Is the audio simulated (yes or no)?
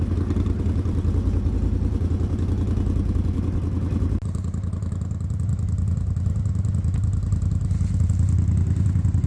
no